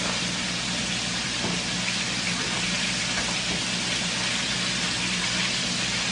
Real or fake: fake